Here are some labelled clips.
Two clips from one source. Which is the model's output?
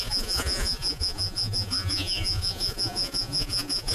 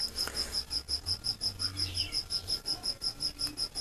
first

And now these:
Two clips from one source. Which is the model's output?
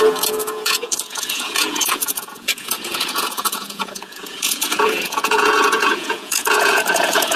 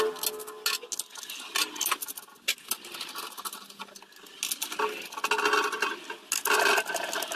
first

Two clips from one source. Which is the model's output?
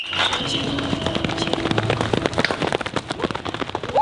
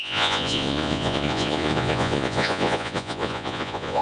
second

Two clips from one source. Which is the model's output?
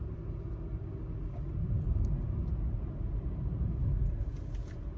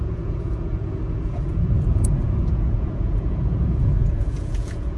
second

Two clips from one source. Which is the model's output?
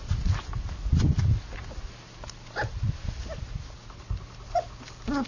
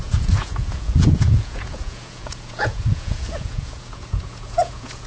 second